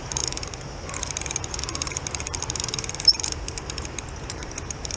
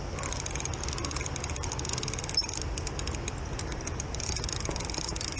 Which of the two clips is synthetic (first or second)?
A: first